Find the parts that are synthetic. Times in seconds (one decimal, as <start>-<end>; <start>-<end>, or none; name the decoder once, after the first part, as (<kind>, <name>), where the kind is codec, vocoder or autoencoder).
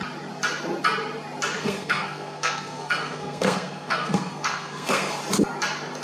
1.6-5.2 (codec, SNAC)